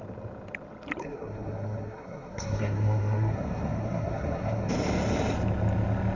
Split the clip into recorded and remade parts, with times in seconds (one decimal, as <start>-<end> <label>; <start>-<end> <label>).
0.0-1.0 recorded; 1.0-4.7 remade; 4.7-6.2 recorded